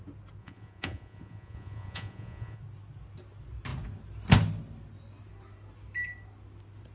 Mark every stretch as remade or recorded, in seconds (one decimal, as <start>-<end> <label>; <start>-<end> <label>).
0.0-0.4 recorded; 0.4-2.6 remade; 2.6-6.9 recorded